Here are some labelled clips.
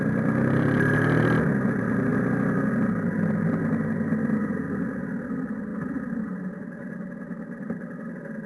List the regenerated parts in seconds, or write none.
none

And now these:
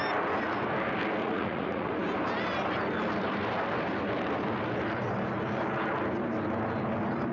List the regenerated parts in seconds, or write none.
1.2-1.9 (vocoder, Vocos)

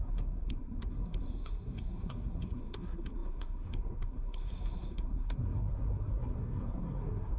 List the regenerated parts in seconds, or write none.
0.0-7.4 (codec, SNAC)

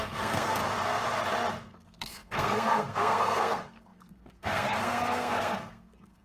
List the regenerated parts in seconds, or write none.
0.0-0.6 (codec, SNAC); 1.6-6.2

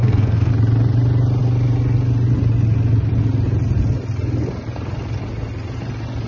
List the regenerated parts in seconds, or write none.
0.0-0.5 (codec, SNAC)

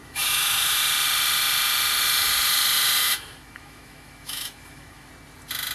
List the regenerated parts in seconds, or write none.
0.0-0.8 (autoencoder, DAC-VAE); 3.0-5.1

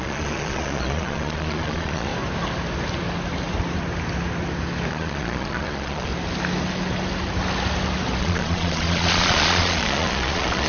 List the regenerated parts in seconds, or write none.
0.0-2.1 (vocoder, Vocos); 4.9-6.1; 8.2-10.7

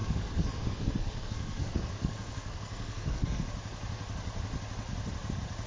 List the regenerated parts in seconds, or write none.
0.0-3.4 (codec, SNAC)